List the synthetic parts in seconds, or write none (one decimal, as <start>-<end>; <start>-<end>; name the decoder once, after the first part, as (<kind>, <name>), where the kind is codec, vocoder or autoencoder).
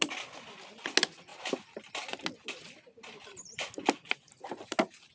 none